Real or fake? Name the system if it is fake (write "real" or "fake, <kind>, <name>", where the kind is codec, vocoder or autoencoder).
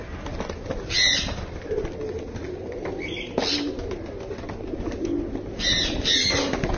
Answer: real